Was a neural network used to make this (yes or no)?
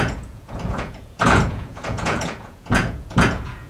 yes